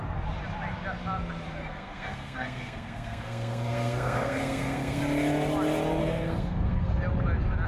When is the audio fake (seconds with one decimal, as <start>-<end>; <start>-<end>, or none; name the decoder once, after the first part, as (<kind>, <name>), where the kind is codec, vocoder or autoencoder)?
1.6-5.0 (codec, SNAC); 6.0-7.0